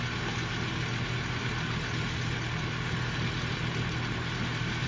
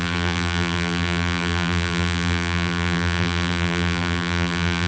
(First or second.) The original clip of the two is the first